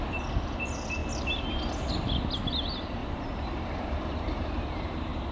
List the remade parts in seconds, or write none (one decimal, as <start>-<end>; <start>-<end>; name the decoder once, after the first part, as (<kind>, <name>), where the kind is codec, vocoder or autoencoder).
3.0-5.3 (vocoder, BigVGAN v2)